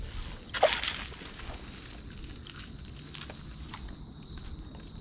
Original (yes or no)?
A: yes